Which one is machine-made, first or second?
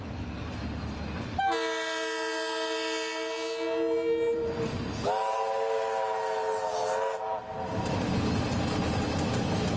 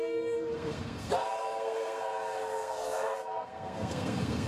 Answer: second